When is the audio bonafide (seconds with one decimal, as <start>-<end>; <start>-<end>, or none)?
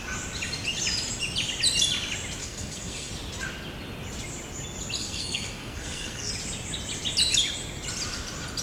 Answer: 0.0-2.4; 3.1-5.0; 6.3-8.6